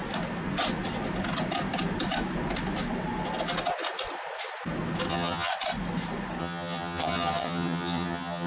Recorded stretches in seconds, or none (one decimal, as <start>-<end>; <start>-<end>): 0.0-5.1; 5.5-6.4